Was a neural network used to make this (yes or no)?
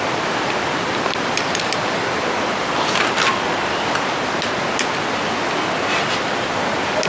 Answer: no